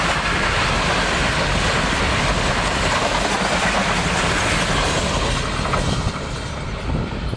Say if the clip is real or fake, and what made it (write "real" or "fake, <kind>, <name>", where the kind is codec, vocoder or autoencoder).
real